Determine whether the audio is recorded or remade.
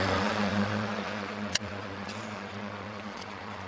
remade